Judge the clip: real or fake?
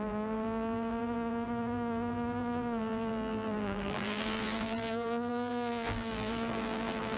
fake